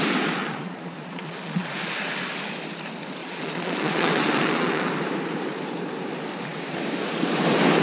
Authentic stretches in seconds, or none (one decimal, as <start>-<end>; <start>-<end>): 0.0-0.4; 1.7-3.2; 4.9-7.8